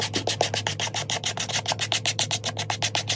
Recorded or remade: recorded